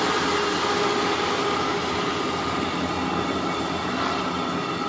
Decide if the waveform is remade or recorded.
recorded